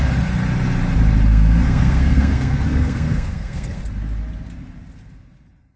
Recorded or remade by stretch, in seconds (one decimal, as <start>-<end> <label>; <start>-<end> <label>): 0.0-1.3 recorded; 1.3-3.8 remade; 3.8-5.8 recorded